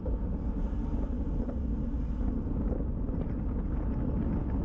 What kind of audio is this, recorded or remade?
recorded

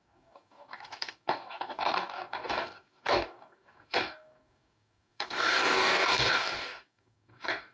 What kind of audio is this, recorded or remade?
remade